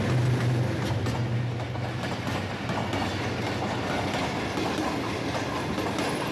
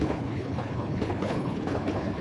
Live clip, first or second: first